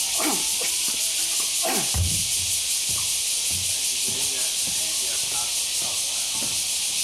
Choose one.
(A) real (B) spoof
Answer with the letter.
A